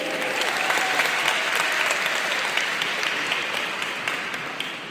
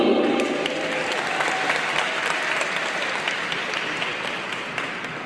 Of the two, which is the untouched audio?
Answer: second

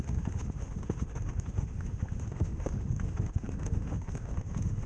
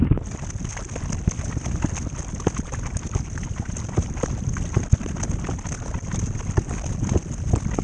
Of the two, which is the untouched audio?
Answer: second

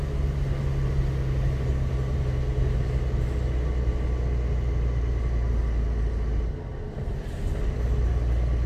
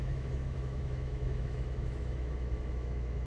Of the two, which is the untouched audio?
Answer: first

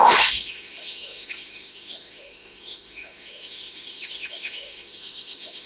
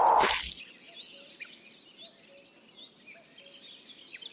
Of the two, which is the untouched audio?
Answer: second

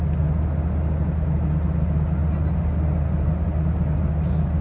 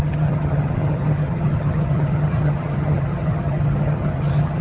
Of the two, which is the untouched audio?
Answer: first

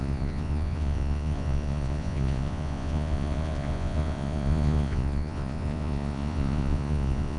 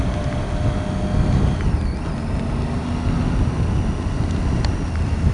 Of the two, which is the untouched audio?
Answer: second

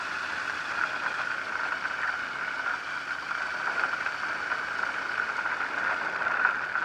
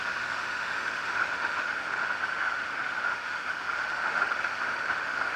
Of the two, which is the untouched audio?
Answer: first